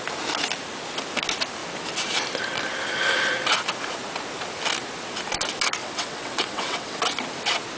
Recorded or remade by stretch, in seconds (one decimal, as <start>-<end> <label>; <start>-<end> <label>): 0.0-5.8 recorded; 5.8-7.0 remade; 7.0-7.8 recorded